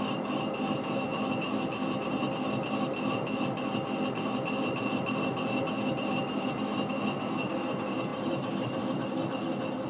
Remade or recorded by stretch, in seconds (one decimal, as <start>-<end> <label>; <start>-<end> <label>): 0.0-8.1 recorded; 8.1-8.8 remade; 8.8-9.9 recorded